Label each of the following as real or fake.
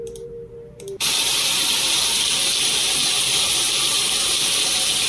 fake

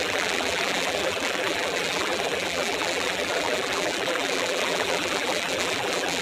fake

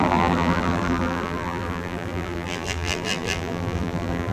fake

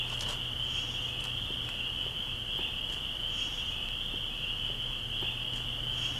real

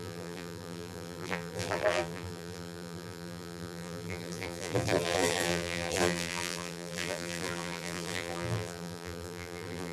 fake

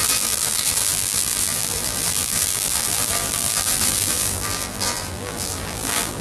fake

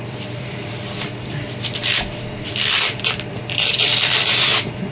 fake